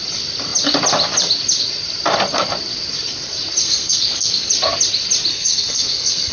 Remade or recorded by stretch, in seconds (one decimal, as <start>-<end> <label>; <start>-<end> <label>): 0.0-3.6 recorded; 3.6-4.5 remade; 4.5-5.3 recorded; 5.3-6.3 remade